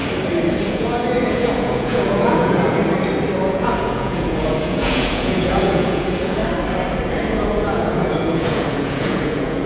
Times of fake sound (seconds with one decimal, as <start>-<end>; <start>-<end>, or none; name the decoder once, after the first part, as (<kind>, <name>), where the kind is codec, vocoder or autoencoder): 0.7-2.8 (vocoder, Vocos); 3.5-6.4; 7.3-9.7